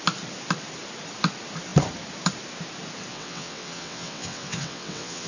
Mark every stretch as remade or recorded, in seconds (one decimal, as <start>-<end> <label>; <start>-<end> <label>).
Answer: 0.0-3.1 recorded; 3.1-5.3 remade

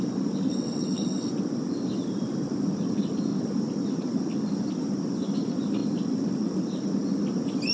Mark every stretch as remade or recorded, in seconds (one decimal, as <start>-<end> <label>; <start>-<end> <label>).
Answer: 0.0-0.5 recorded; 0.5-1.3 remade; 1.3-7.7 recorded

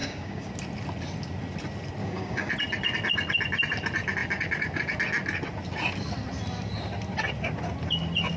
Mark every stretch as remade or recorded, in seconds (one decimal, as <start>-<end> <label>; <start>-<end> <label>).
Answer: 0.0-0.5 remade; 0.5-2.0 recorded; 2.0-2.5 remade; 2.5-8.4 recorded

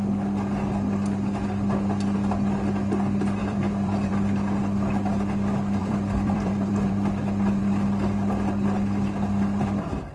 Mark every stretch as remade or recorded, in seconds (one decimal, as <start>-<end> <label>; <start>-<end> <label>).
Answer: 0.0-3.4 recorded; 3.4-4.1 remade; 4.1-5.8 recorded; 5.8-6.9 remade; 6.9-10.1 recorded

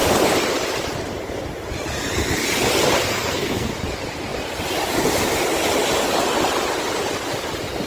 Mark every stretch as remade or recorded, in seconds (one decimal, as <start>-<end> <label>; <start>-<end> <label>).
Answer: 0.0-3.1 recorded; 3.1-3.7 remade; 3.7-7.9 recorded

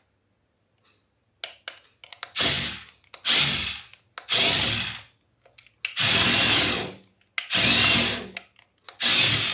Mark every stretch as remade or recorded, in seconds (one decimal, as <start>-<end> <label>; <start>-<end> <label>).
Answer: 0.0-9.5 recorded